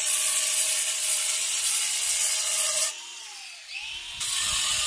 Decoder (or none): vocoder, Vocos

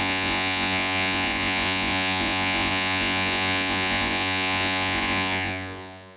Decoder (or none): vocoder, Vocos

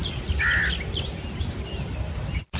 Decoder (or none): none